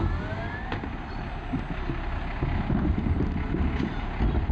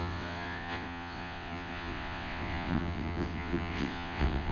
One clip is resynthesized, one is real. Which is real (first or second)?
first